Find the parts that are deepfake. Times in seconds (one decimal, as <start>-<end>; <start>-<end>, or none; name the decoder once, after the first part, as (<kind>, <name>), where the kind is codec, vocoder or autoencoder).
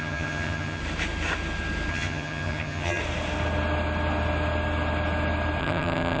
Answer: 0.0-0.8 (vocoder, HiFi-GAN); 1.9-3.0; 5.6-6.2